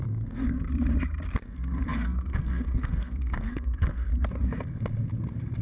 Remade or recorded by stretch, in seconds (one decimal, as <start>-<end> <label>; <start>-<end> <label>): 0.0-0.7 remade; 0.7-1.4 recorded; 1.4-4.1 remade; 4.1-5.6 recorded